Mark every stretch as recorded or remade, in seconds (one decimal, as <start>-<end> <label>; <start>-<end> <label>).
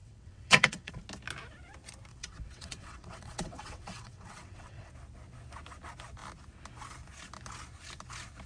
0.0-0.9 remade; 0.9-2.1 recorded; 2.1-4.9 remade; 4.9-8.5 recorded